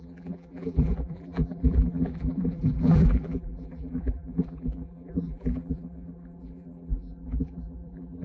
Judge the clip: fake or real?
fake